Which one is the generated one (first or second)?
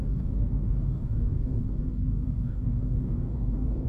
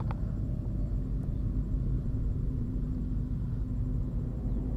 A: first